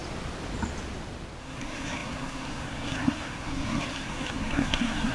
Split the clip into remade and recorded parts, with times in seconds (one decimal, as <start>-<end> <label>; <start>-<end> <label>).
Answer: 0.0-1.4 recorded; 1.4-5.1 remade